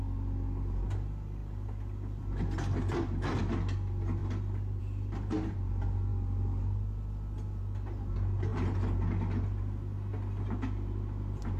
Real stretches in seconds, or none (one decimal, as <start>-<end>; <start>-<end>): 0.0-4.2; 4.8-11.6

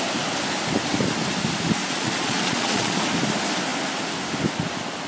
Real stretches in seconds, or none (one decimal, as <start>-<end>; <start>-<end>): 0.0-1.8; 3.0-5.1

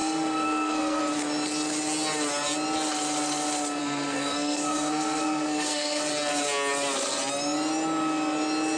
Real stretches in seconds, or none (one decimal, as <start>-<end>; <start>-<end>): 1.0-3.8; 6.0-8.8

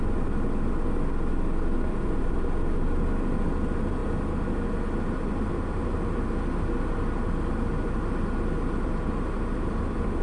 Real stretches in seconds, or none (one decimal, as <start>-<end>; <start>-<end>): 0.0-10.2

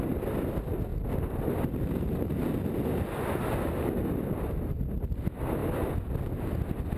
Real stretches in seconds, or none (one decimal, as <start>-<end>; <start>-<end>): 0.0-7.0

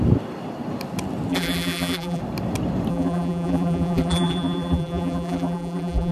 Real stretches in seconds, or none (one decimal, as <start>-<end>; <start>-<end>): 0.0-1.3; 2.2-2.9

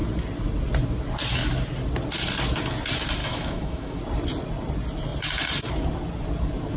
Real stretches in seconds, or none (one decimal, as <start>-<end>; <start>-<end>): 0.0-3.2; 4.0-6.8

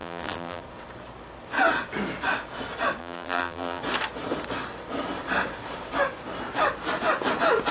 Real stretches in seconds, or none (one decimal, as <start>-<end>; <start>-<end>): 0.6-3.0; 3.8-7.7